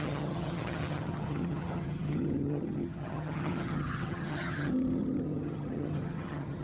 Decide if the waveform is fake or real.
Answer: fake